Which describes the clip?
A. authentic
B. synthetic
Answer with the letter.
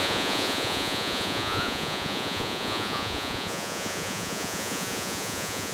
B